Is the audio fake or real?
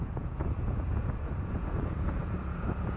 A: fake